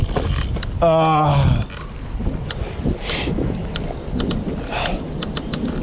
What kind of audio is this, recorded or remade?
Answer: recorded